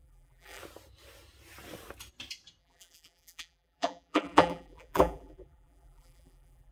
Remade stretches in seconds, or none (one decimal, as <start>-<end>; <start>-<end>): 0.0-0.6; 2.6-6.7